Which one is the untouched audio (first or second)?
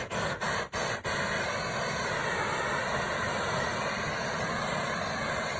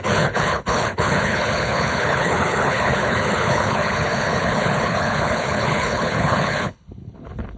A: first